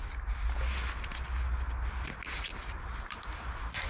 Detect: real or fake real